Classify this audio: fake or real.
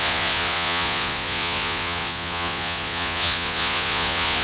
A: fake